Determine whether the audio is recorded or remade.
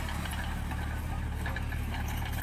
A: recorded